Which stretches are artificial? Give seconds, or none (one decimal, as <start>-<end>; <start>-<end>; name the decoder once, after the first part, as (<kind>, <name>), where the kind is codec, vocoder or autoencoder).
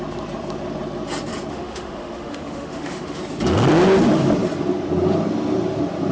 1.5-3.2 (autoencoder, DAC-VAE)